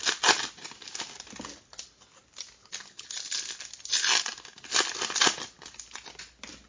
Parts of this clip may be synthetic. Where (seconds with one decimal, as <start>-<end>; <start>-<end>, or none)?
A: none